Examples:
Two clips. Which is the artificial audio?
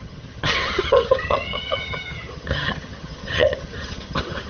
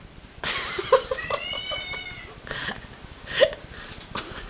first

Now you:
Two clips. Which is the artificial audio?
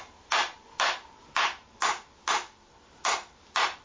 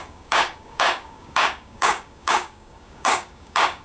second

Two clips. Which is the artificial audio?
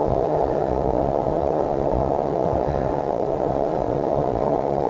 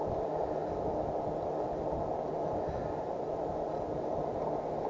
first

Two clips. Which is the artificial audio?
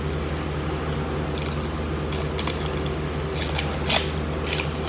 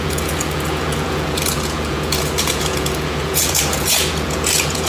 second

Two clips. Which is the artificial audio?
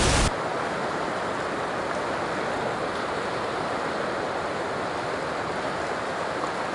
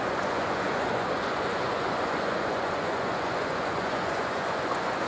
second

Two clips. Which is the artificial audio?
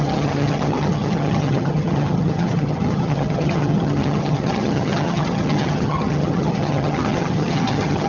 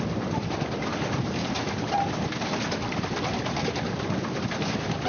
first